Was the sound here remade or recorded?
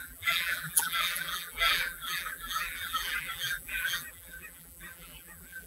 remade